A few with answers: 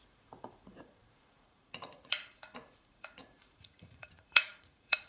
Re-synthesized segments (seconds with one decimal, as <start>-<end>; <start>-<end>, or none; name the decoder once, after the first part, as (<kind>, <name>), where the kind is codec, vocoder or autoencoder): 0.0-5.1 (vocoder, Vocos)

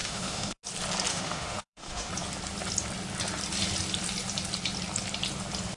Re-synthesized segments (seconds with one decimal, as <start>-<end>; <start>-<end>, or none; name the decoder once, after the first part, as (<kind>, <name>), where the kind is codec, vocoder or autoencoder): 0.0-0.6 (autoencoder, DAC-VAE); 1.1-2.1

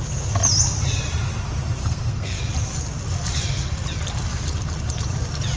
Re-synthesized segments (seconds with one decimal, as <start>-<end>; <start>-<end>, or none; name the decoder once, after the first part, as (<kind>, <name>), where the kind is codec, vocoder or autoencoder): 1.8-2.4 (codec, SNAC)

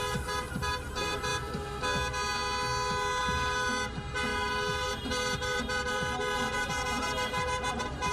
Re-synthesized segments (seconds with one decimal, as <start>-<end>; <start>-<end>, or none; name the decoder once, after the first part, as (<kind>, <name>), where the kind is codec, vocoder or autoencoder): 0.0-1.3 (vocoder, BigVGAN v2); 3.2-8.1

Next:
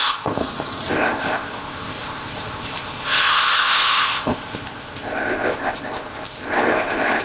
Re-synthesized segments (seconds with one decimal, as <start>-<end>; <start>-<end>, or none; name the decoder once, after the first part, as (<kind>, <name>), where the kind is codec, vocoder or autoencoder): 0.0-0.4 (codec, ZipCodec); 0.9-7.2